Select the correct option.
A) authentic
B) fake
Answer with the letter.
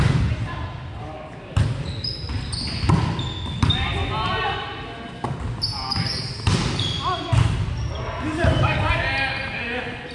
A